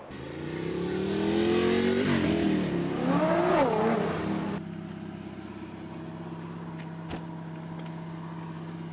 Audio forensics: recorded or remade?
recorded